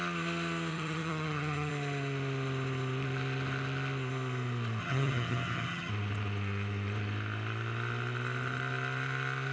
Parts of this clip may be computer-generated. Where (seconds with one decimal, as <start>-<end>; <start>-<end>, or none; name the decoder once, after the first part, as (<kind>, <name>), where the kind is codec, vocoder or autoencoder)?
0.7-1.7 (vocoder, HiFi-GAN); 4.8-5.9